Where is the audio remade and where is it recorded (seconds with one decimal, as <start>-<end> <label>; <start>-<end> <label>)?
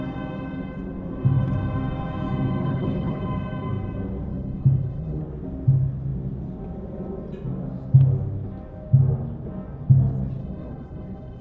0.0-2.6 recorded; 2.6-3.2 remade; 3.2-4.3 recorded; 4.3-5.2 remade; 5.2-10.4 recorded; 10.4-11.4 remade